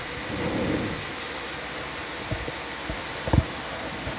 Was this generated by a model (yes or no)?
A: no